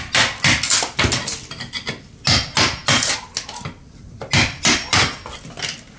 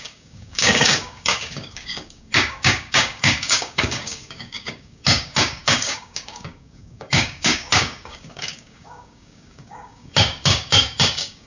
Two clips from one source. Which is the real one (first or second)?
first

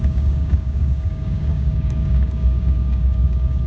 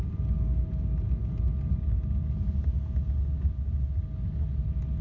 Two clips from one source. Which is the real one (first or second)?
second